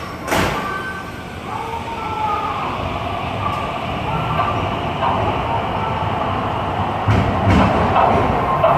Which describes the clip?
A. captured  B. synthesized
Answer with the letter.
A